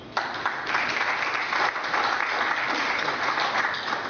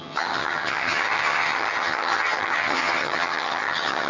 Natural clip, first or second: first